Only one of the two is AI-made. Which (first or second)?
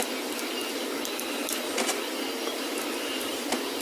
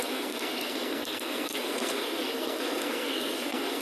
second